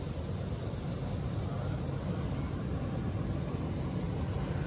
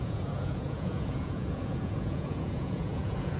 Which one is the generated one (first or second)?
second